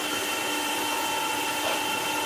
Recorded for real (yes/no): yes